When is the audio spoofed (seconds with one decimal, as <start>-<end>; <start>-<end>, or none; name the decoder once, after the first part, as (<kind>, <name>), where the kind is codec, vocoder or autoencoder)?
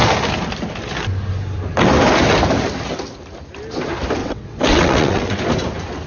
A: 4.2-5.4 (vocoder, WaveNeXt)